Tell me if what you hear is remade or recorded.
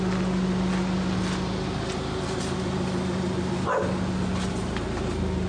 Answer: recorded